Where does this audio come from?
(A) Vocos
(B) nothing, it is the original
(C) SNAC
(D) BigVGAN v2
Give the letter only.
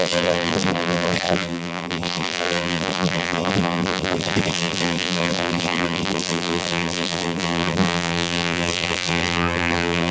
D